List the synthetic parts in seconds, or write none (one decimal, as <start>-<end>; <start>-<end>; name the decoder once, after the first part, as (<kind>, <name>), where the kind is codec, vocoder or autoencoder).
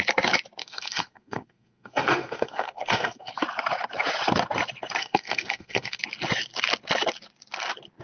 0.6-3.3 (codec, SNAC); 5.0-6.0